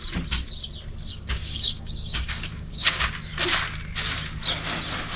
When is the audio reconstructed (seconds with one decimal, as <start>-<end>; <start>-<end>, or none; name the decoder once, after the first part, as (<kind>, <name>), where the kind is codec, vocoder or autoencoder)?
1.1-3.1 (codec, DAC)